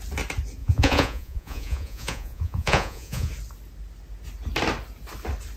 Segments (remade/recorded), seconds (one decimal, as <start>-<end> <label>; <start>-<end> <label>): 0.0-0.6 recorded; 0.6-3.3 remade; 3.3-5.6 recorded